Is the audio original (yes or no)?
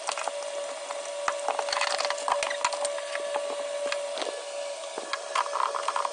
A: yes